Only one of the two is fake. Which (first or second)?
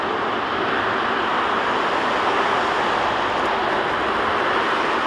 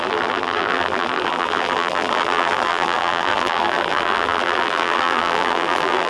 second